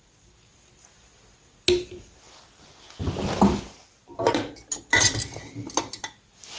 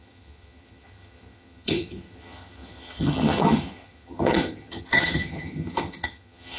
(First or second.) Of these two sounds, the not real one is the second